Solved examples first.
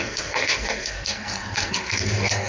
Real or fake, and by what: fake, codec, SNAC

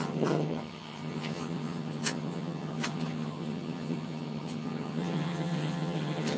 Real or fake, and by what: fake, vocoder, HiFi-GAN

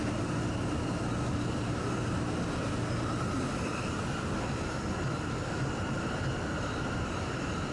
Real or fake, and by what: real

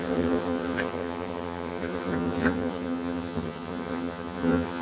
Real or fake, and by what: fake, vocoder, HiFi-GAN